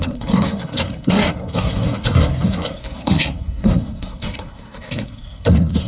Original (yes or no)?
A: no